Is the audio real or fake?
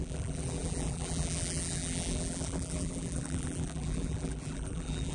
fake